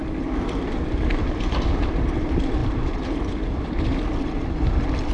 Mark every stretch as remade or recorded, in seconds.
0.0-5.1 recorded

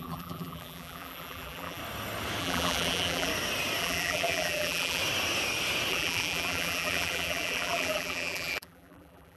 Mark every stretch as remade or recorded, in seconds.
0.0-1.8 remade; 1.8-2.4 recorded; 2.4-3.3 remade; 3.3-3.8 recorded; 3.8-5.0 remade; 5.0-5.9 recorded; 5.9-9.4 remade